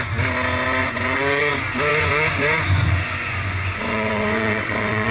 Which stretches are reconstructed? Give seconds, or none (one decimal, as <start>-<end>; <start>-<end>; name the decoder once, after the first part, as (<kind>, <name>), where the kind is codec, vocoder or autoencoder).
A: 0.8-1.5 (vocoder, Vocos); 1.9-5.1